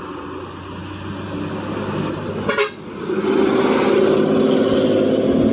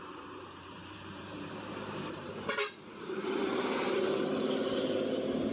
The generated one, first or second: second